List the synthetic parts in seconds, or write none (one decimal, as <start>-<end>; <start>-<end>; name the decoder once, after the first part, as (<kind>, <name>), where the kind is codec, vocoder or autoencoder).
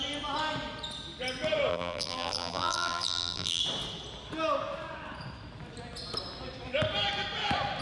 1.7-3.6 (vocoder, BigVGAN v2)